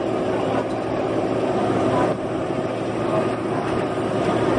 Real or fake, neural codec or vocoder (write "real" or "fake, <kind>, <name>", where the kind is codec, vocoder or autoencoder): real